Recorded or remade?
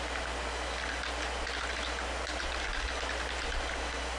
recorded